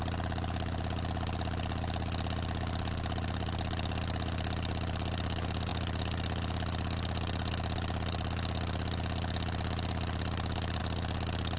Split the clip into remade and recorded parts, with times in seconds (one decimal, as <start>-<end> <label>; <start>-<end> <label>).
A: 0.0-11.6 recorded